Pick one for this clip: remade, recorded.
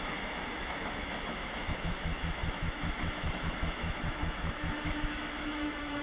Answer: remade